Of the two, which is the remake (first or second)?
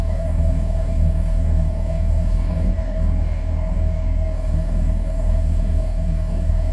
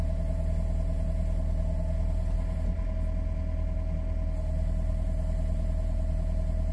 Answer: first